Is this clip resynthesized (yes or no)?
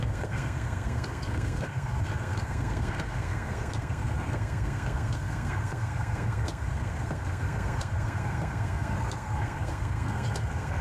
yes